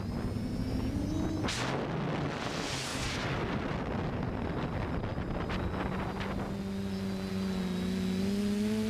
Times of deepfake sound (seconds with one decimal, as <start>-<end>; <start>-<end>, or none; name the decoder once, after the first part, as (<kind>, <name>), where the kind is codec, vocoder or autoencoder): 2.9-3.4 (vocoder, BigVGAN v2)